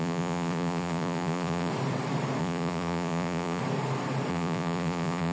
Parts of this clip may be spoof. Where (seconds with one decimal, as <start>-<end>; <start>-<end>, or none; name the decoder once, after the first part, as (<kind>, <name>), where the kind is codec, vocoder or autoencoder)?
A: 0.0-1.7 (vocoder, Vocos); 2.4-3.6; 4.3-5.3